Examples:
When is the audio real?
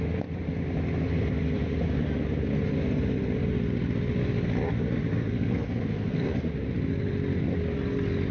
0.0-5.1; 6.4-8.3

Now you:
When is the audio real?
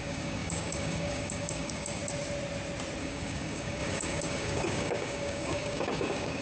2.0-3.0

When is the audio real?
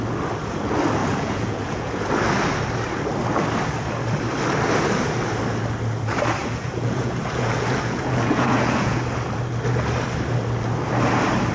0.0-1.0; 2.1-6.4; 9.0-11.5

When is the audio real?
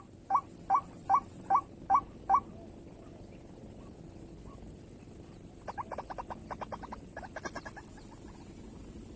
0.0-9.2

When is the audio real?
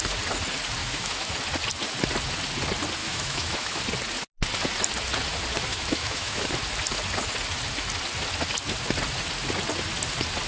0.0-0.8; 1.3-3.0; 3.8-5.7; 6.5-10.5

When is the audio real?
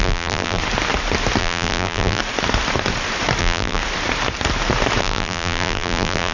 0.6-1.4; 2.2-3.4; 3.8-5.0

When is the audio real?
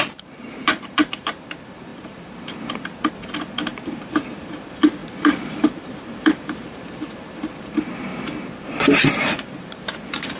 8.1-9.1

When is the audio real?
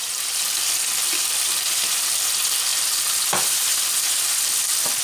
0.0-5.0